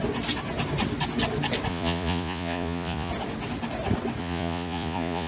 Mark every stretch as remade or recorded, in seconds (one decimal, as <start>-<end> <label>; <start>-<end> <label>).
0.0-1.7 recorded; 1.7-3.1 remade; 3.1-4.2 recorded; 4.2-5.3 remade